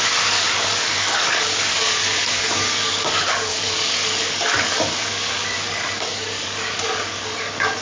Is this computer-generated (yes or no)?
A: yes